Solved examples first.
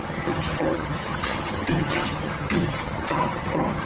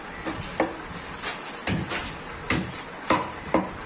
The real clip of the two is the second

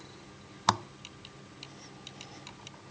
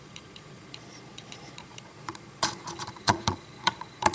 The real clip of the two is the first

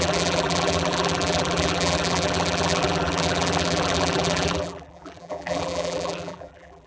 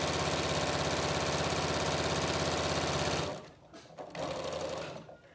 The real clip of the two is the second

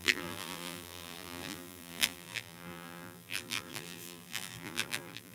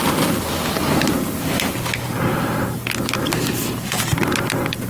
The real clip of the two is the second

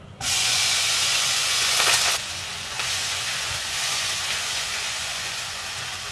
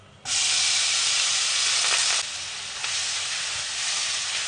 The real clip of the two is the second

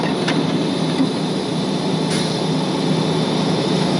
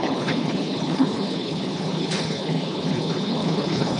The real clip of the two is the first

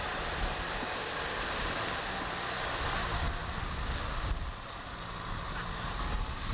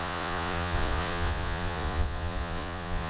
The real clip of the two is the first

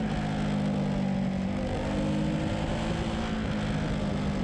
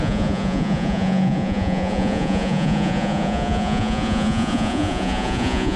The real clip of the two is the first